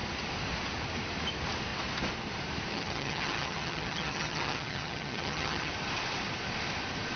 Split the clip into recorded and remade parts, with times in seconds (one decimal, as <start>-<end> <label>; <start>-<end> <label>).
0.0-2.7 recorded; 2.7-5.7 remade; 5.7-7.2 recorded